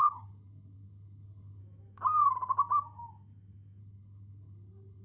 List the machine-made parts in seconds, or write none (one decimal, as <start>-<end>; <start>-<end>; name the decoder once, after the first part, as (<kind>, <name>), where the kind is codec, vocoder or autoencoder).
0.0-1.6 (codec, HILCodec); 3.8-5.0